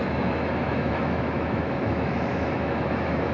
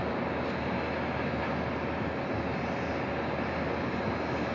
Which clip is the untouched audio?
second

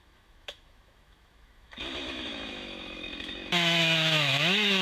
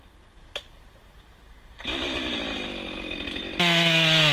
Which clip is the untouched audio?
second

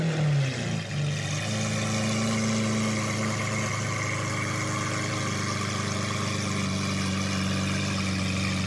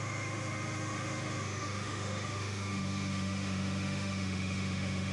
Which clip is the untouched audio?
first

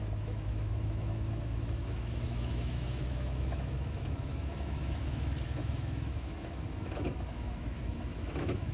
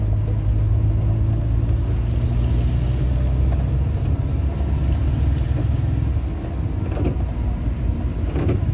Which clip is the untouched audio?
second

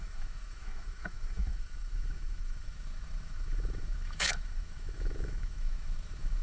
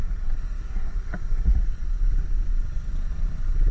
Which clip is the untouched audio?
second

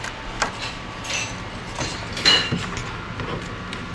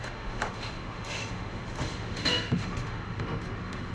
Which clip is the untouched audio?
first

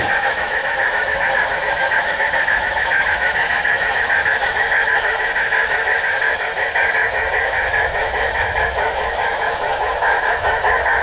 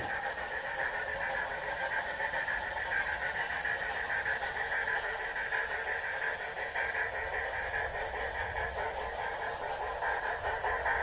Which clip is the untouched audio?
second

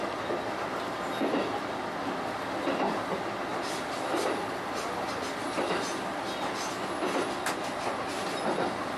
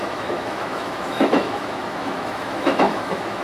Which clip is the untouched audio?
first